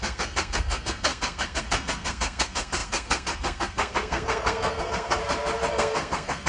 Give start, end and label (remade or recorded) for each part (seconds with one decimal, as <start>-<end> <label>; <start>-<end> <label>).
0.0-5.2 remade; 5.2-5.7 recorded; 5.7-6.5 remade